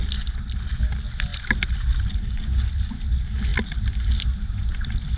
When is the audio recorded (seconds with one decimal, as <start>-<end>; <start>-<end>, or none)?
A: 0.0-5.2